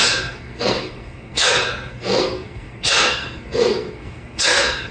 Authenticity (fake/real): fake